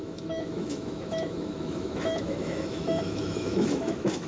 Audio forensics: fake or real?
fake